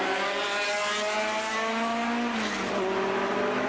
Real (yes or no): yes